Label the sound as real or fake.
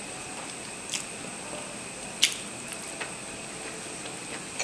real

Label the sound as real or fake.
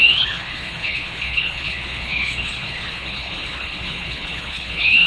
fake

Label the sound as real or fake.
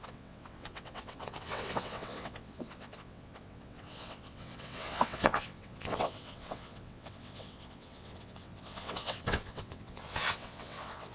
fake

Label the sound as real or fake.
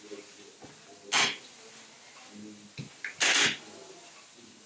real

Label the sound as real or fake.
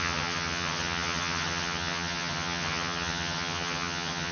fake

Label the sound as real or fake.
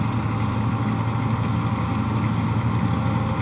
real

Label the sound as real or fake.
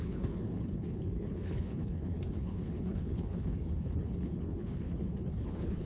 fake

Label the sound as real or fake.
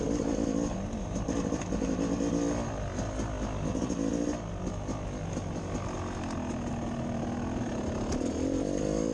real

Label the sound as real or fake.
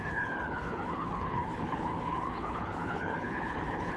fake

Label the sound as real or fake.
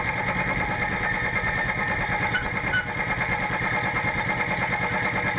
real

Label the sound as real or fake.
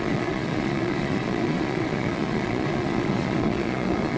fake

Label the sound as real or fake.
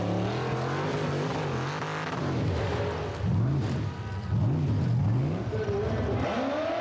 real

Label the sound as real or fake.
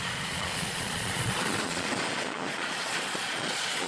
fake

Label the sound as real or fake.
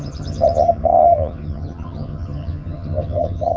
fake